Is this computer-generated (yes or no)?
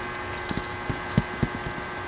no